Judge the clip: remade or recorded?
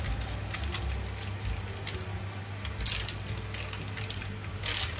recorded